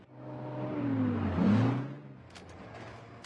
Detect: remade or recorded recorded